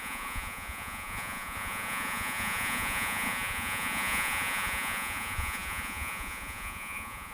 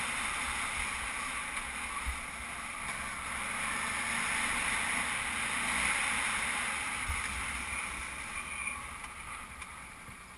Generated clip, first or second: first